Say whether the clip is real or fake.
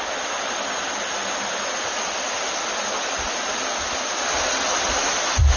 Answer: real